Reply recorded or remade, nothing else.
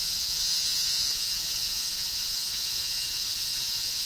remade